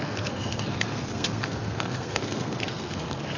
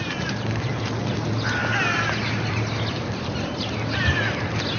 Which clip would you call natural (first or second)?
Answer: second